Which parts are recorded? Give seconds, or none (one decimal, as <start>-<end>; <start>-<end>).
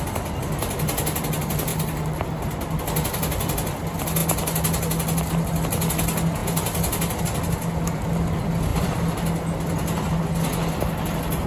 0.0-1.7; 2.4-8.7; 9.4-11.5